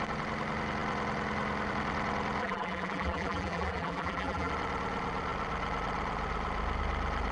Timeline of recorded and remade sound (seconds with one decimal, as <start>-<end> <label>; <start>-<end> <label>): 0.0-2.4 recorded; 2.4-4.5 remade; 4.5-7.3 recorded